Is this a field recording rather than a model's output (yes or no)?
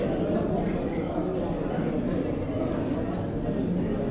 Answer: yes